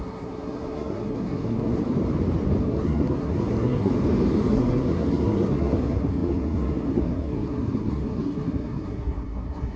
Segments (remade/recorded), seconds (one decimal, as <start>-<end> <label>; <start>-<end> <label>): 0.0-1.8 remade; 1.8-2.6 recorded; 2.6-3.9 remade; 3.9-4.5 recorded; 4.5-9.8 remade